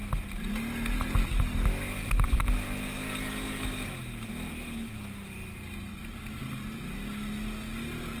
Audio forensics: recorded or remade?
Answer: recorded